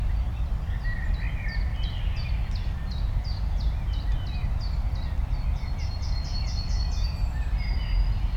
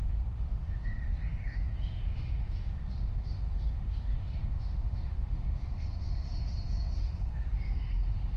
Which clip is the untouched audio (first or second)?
first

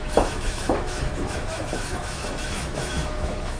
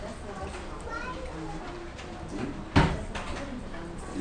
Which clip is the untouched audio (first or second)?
second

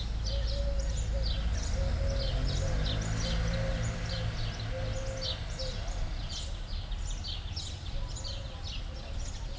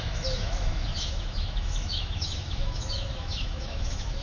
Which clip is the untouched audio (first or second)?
first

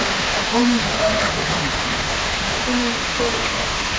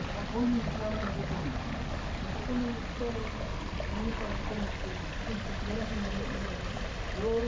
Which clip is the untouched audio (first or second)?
second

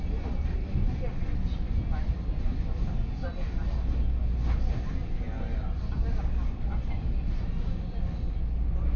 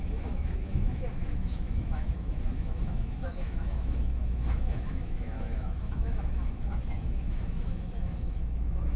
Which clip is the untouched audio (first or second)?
first